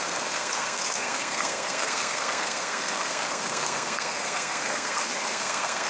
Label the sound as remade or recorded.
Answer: remade